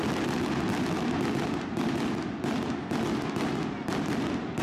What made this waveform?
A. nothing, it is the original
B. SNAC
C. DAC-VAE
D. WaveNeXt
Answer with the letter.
A